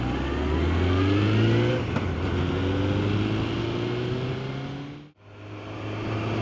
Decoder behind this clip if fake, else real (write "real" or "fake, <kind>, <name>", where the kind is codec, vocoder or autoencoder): real